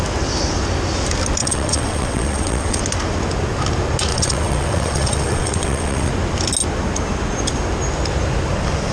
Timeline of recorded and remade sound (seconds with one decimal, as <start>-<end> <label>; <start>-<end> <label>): 0.0-1.4 recorded; 1.4-2.8 remade; 2.8-4.1 recorded; 4.1-6.1 remade; 6.1-8.9 recorded